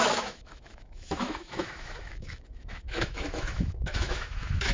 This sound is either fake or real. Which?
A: fake